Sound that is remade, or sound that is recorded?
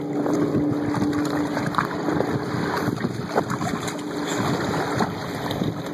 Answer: recorded